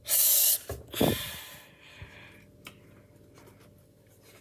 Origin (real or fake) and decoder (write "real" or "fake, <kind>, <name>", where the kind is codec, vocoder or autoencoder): real